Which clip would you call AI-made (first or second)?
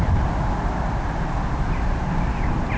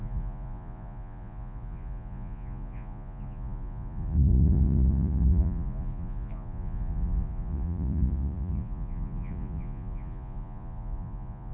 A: second